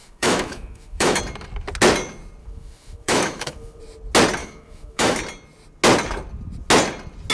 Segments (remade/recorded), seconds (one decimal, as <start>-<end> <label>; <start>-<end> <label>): 0.0-1.2 remade; 1.2-2.4 recorded; 2.4-3.8 remade; 3.8-4.4 recorded; 4.4-5.2 remade; 5.2-7.3 recorded